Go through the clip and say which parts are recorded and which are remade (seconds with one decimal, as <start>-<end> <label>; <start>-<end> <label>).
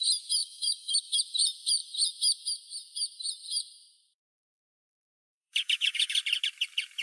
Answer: 0.0-0.4 recorded; 0.4-1.2 remade; 1.2-4.3 recorded; 4.3-6.2 remade; 6.2-7.0 recorded